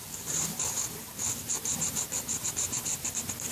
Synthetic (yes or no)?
yes